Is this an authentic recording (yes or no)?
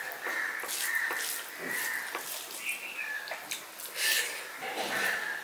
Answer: yes